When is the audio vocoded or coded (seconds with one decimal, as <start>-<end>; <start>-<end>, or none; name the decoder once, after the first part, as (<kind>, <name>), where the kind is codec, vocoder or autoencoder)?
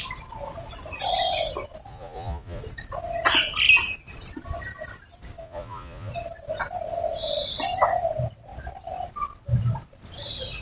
1.9-2.6 (vocoder, Vocos); 5.4-6.1